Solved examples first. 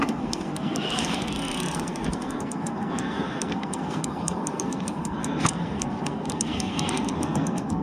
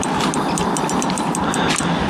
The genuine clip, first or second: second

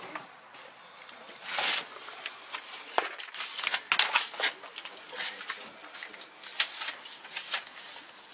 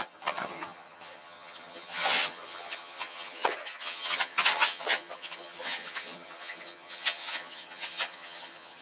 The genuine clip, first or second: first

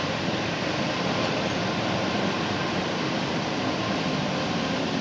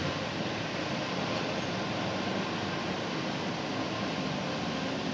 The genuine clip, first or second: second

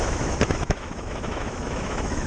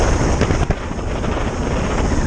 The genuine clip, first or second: second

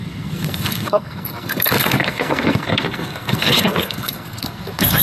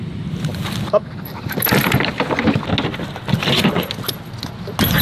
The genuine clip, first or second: second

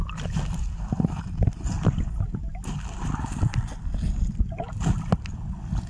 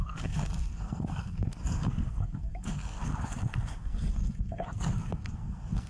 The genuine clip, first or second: first